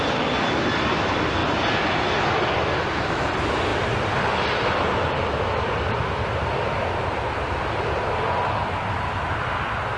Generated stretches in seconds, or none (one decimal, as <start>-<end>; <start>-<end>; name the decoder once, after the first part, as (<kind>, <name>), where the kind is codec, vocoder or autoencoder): none